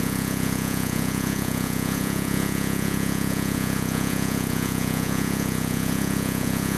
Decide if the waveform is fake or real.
fake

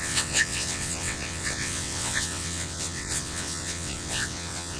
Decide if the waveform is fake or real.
fake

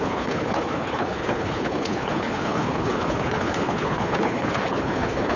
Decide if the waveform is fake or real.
fake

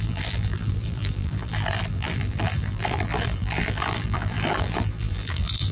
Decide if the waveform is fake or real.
fake